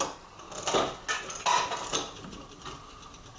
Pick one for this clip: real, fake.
real